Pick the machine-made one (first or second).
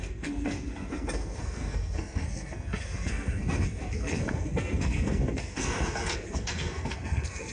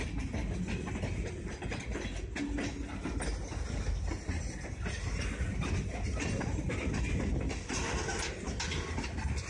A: first